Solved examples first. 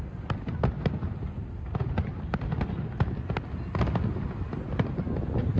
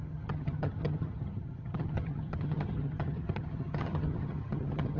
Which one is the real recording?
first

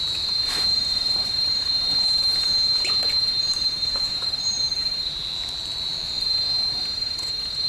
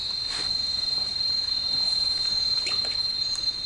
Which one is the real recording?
second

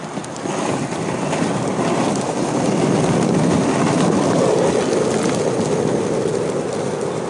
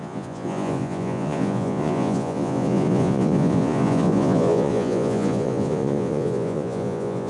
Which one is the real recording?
first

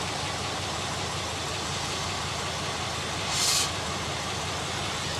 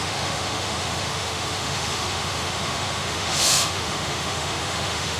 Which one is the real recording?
first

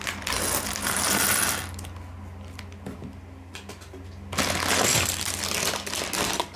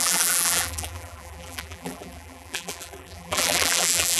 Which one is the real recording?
first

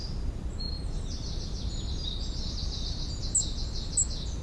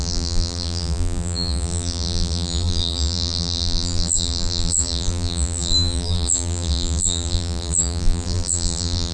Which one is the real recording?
first